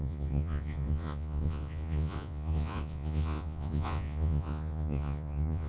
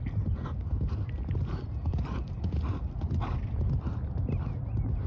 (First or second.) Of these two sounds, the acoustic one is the second